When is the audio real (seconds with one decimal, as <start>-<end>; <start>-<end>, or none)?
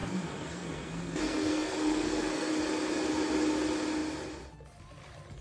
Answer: 2.5-5.4